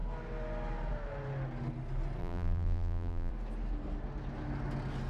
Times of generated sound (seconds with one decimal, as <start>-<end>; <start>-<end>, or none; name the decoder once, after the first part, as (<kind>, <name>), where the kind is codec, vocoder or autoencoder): 2.2-3.3 (vocoder, BigVGAN v2)

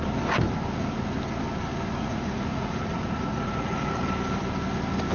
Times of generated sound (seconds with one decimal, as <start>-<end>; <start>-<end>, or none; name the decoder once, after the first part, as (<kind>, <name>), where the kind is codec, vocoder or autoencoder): 2.0-4.0 (vocoder, Vocos)

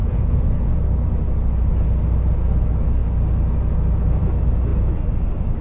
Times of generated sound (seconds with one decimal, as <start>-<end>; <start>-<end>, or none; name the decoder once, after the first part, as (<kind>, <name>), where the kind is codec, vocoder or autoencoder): 0.0-0.8 (vocoder, Vocos)

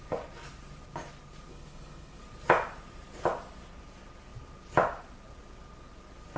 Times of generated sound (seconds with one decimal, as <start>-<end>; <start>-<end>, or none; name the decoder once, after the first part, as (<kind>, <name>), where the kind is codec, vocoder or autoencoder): 1.5-2.2 (codec, HILCodec)

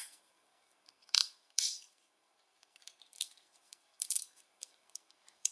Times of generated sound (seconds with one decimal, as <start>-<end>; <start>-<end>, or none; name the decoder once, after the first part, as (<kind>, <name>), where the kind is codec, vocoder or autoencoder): 0.0-5.5 (codec, SNAC)

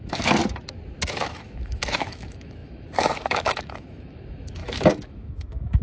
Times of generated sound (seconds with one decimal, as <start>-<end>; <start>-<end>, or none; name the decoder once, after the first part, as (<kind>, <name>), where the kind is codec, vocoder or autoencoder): 0.0-0.4 (autoencoder, DAC-VAE); 1.1-5.8

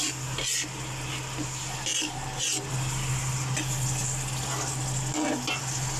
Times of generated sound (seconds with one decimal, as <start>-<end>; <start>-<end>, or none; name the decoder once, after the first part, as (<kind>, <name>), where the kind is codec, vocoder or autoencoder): none

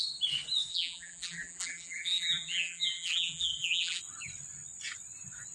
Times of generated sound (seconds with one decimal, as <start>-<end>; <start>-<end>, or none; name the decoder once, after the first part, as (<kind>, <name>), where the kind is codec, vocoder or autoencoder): 0.7-4.0 (vocoder, BigVGAN v2)